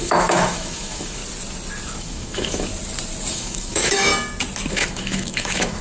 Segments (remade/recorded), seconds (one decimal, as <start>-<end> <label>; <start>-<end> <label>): 0.0-1.2 remade; 1.2-2.0 recorded; 2.0-2.7 remade; 2.7-3.3 recorded; 3.3-4.1 remade; 4.1-4.7 recorded; 4.7-5.8 remade